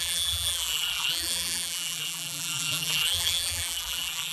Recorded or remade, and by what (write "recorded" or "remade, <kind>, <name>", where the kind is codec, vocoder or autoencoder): remade, vocoder, BigVGAN v2